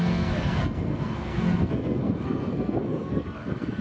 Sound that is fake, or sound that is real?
fake